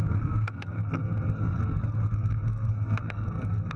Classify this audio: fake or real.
fake